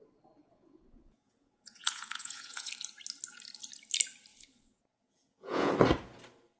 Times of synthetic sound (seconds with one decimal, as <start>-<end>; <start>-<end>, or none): 0.4-2.7; 4.3-5.7